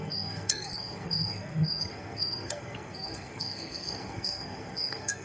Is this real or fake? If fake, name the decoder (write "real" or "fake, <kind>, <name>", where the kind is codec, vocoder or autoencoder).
fake, codec, SNAC